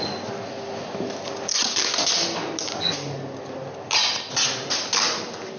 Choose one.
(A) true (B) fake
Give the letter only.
A